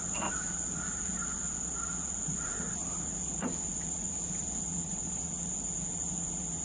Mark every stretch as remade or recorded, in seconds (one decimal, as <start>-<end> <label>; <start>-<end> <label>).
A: 0.0-1.1 remade; 1.1-1.7 recorded; 1.7-6.6 remade